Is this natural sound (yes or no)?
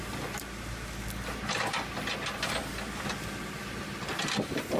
yes